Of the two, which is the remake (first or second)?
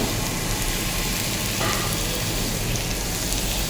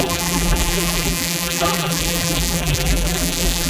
second